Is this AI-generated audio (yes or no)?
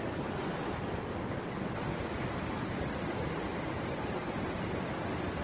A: no